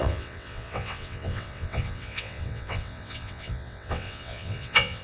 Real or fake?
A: fake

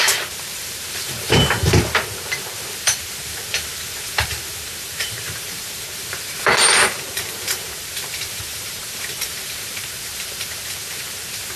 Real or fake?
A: fake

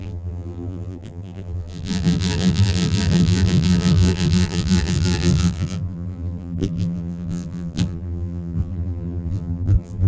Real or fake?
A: fake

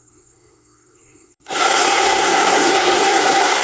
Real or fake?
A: fake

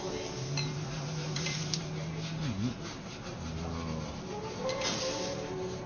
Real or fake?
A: real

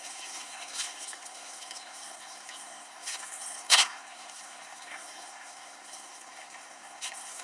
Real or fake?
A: fake